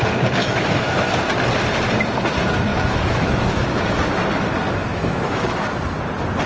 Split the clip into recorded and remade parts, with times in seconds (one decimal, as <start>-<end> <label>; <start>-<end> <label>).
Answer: 0.0-0.4 recorded; 0.4-1.1 remade; 1.1-2.7 recorded; 2.7-4.1 remade; 4.1-4.9 recorded; 4.9-5.6 remade; 5.6-6.5 recorded